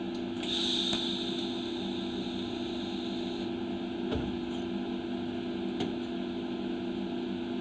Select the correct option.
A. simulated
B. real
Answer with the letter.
B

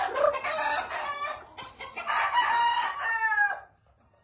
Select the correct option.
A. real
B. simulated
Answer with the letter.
A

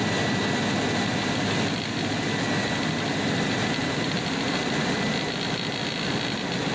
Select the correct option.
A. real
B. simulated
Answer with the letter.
A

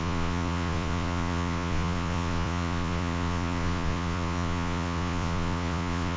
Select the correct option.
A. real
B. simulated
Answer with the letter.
B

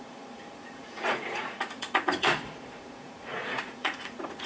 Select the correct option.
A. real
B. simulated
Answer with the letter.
B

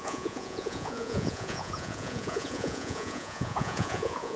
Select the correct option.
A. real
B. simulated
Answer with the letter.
B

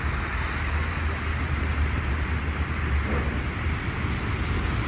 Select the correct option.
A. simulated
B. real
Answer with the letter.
B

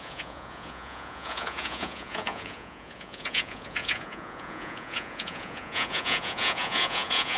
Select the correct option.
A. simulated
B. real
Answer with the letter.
A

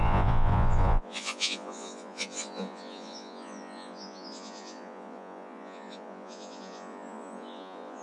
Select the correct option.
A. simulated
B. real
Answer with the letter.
A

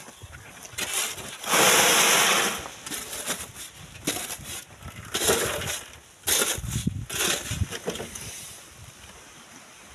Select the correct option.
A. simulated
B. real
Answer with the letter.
B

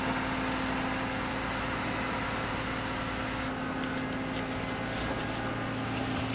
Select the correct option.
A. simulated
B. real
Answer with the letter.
B